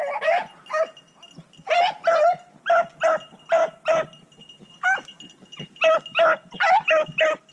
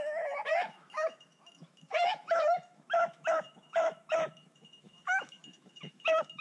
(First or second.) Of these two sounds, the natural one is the first